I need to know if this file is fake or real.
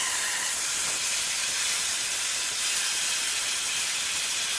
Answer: real